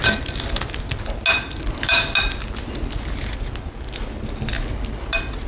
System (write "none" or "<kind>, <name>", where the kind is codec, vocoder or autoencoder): none